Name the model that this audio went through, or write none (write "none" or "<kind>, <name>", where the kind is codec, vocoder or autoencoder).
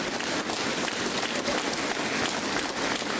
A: none